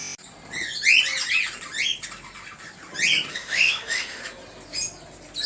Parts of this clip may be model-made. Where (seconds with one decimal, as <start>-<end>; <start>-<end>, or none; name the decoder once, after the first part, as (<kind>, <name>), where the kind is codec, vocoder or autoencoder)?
3.3-4.2 (autoencoder, DAC-VAE)